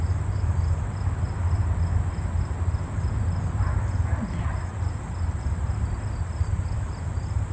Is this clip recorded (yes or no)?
yes